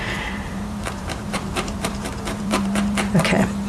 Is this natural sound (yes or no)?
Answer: no